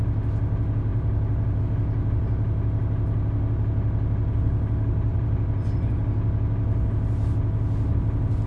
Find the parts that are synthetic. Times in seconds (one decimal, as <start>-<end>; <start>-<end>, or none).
0.9-1.6; 5.1-5.9